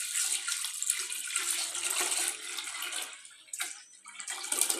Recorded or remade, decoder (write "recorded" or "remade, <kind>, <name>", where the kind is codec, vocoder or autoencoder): recorded